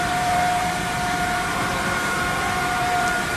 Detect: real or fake fake